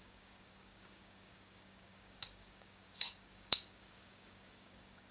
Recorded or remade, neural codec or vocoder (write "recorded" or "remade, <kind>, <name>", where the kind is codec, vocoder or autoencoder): remade, codec, DAC